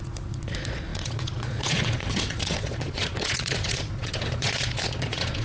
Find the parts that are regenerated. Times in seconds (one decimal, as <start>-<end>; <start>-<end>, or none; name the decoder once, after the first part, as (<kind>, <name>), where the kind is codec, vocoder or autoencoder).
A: 0.0-5.4 (vocoder, Vocos)